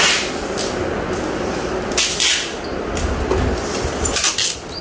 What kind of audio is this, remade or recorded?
recorded